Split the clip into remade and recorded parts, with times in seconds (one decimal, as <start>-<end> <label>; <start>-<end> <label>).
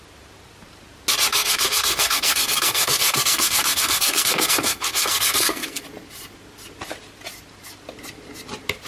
0.0-1.3 recorded; 1.3-5.8 remade; 5.8-8.9 recorded